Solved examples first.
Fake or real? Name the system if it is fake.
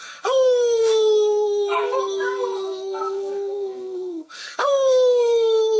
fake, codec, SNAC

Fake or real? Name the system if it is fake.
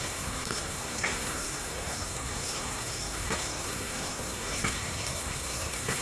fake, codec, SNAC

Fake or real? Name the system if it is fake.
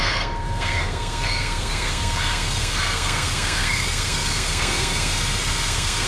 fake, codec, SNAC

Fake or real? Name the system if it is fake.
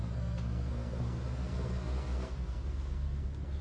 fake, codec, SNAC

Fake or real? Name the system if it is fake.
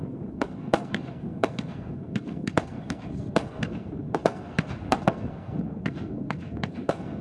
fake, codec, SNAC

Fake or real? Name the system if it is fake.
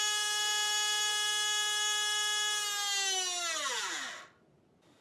real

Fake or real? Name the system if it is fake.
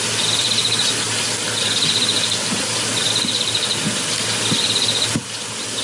real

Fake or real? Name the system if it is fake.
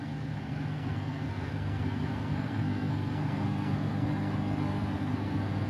fake, codec, SNAC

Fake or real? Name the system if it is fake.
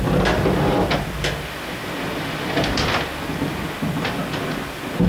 real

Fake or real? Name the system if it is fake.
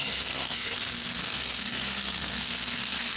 fake, codec, SNAC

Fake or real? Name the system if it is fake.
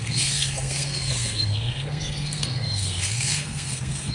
fake, codec, SNAC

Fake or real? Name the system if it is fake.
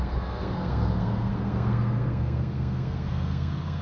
fake, codec, SNAC